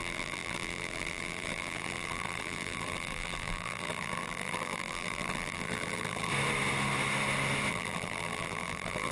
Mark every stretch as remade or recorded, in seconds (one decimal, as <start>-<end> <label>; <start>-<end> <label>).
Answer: 0.0-6.3 remade; 6.3-7.7 recorded; 7.7-9.1 remade